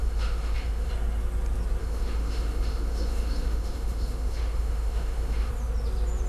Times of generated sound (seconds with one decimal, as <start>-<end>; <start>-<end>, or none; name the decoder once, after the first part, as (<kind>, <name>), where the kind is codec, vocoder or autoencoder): 0.0-0.9 (autoencoder, DAC-VAE); 1.8-5.5